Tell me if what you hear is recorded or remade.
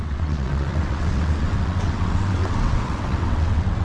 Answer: remade